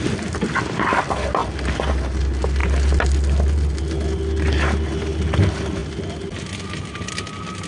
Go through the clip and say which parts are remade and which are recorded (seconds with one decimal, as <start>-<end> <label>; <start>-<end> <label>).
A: 0.0-7.7 recorded